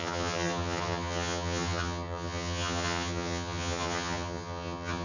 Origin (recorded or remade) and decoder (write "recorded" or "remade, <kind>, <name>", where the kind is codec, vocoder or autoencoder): remade, vocoder, HiFi-GAN